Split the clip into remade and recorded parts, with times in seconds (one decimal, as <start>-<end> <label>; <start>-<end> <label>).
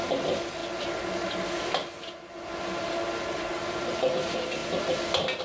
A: 0.0-5.4 recorded